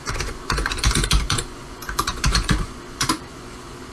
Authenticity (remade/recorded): remade